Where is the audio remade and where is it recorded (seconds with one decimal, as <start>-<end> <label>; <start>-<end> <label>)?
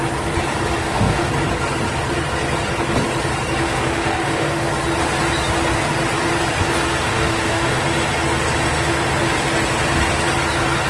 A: 0.0-0.8 recorded; 0.8-1.3 remade; 1.3-3.6 recorded; 3.6-4.7 remade; 4.7-7.1 recorded; 7.1-7.7 remade; 7.7-10.9 recorded